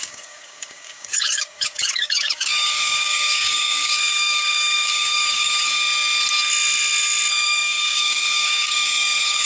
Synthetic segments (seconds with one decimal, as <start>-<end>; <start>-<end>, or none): 0.0-5.7; 7.3-9.4